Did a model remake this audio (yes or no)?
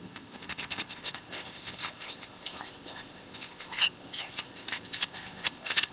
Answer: yes